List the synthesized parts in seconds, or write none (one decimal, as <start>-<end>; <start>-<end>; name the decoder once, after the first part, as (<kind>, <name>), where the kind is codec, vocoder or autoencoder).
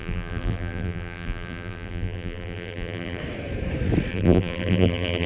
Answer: 0.0-3.2 (vocoder, BigVGAN v2); 4.1-5.3